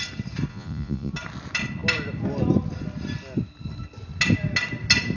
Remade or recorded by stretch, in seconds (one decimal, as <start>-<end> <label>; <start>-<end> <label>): 0.0-0.5 recorded; 0.5-1.1 remade; 1.1-5.2 recorded